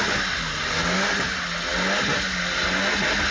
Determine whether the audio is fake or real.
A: real